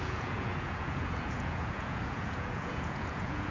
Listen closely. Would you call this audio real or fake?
fake